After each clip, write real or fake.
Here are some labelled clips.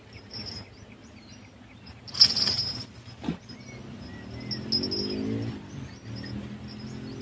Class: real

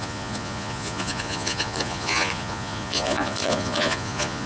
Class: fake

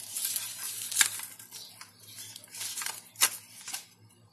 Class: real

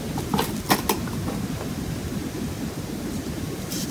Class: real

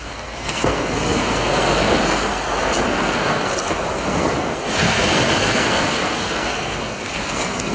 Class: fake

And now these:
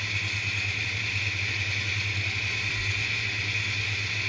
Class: real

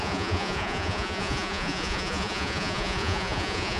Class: fake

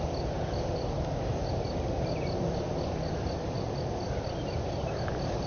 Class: real